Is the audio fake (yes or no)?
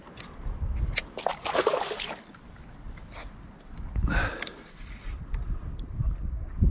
yes